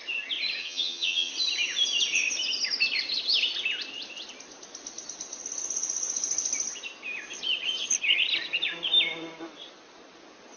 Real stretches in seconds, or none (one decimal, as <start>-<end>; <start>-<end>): 0.0-0.6; 1.3-10.6

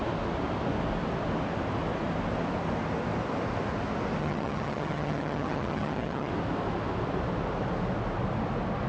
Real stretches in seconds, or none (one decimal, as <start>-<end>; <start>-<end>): 0.0-4.2; 6.3-8.9

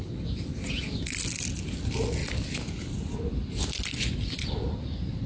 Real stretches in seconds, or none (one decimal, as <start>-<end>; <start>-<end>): 0.0-5.3

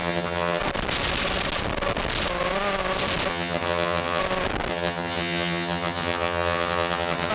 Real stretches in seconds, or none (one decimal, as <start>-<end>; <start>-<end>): 0.6-3.3; 4.2-4.7

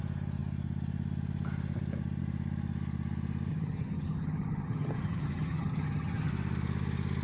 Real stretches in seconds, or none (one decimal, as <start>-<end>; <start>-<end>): 0.0-3.5; 6.3-7.2